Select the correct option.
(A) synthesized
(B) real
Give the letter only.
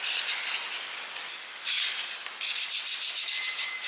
A